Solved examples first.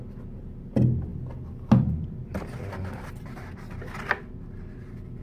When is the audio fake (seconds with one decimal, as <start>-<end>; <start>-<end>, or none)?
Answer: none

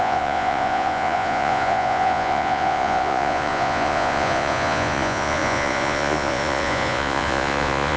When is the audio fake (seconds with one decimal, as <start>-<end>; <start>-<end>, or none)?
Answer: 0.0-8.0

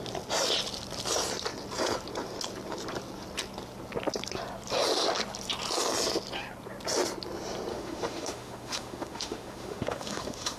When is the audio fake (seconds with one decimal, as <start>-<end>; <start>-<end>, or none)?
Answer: 7.7-10.6